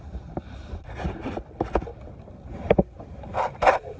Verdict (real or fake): fake